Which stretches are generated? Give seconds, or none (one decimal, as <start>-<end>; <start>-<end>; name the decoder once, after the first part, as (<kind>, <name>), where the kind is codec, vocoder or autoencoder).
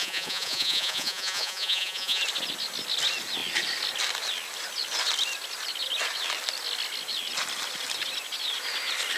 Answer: 0.0-2.2 (vocoder, Vocos)